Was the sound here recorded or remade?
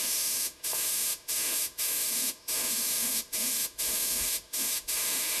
remade